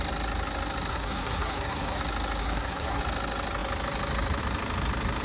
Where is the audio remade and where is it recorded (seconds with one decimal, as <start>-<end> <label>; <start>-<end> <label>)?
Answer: 0.0-0.9 recorded; 0.9-2.0 remade; 2.0-2.4 recorded; 2.4-3.0 remade; 3.0-5.2 recorded

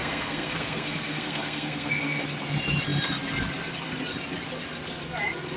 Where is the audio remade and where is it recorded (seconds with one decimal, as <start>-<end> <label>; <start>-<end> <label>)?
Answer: 0.0-2.2 remade; 2.2-5.6 recorded

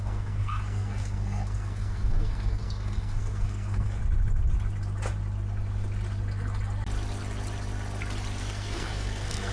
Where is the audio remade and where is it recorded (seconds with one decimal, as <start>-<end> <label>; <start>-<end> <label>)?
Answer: 0.0-4.0 remade; 4.0-8.4 recorded; 8.4-9.5 remade

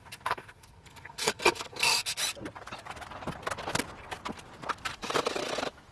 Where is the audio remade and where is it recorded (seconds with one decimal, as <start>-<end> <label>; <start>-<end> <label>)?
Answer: 0.0-2.2 remade; 2.2-5.9 recorded

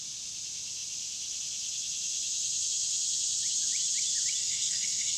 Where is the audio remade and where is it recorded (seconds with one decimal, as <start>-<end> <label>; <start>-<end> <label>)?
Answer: 0.0-4.4 recorded; 4.4-5.2 remade